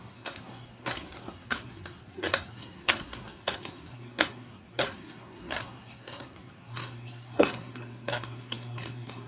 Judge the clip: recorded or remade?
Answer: remade